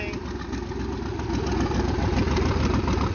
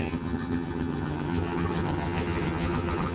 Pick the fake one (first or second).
second